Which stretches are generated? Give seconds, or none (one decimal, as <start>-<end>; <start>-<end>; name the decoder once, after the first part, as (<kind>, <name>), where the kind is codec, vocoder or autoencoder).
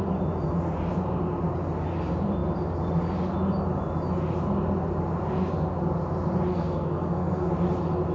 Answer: 6.5-7.5 (codec, SNAC)